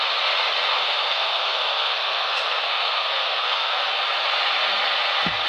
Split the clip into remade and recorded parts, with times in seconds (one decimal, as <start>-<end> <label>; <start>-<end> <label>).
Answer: 0.0-0.7 recorded; 0.7-3.8 remade; 3.8-5.5 recorded